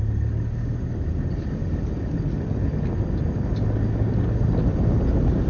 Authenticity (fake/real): real